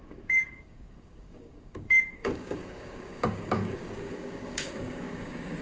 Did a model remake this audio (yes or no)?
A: yes